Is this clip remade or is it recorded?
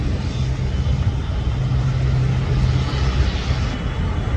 recorded